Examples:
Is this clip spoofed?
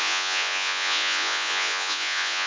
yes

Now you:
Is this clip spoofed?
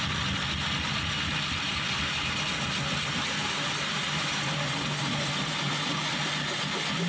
no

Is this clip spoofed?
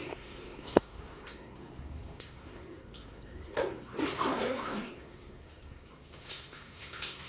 yes